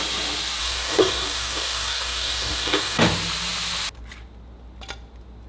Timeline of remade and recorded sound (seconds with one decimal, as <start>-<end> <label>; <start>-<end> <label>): 0.0-0.6 recorded; 0.6-3.0 remade; 3.0-5.5 recorded

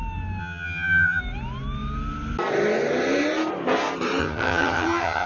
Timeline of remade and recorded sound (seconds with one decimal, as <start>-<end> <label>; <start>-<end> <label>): 0.0-0.4 recorded; 0.4-1.2 remade; 1.2-4.2 recorded; 4.2-5.3 remade

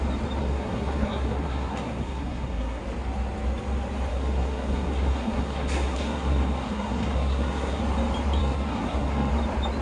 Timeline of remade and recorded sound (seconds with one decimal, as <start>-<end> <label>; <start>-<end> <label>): 0.0-0.4 recorded; 0.4-2.8 remade; 2.8-4.1 recorded; 4.1-7.8 remade; 7.8-8.4 recorded; 8.4-9.3 remade; 9.3-9.8 recorded

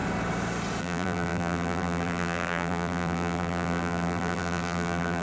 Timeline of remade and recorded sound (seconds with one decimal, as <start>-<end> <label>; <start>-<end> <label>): 0.0-0.8 recorded; 0.8-5.2 remade

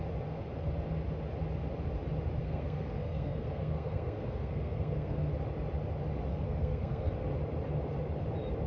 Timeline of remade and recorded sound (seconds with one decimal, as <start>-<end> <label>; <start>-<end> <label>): 0.0-2.4 recorded; 2.4-5.3 remade; 5.3-6.3 recorded; 6.3-7.1 remade; 7.1-8.7 recorded

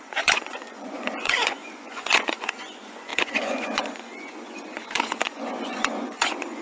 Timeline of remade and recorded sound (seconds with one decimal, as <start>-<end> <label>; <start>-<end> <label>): 0.0-6.6 remade